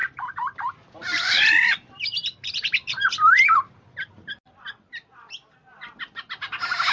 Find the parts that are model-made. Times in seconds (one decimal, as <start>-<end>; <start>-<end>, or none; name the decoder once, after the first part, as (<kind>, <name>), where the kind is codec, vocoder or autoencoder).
0.0-4.1 (vocoder, BigVGAN v2)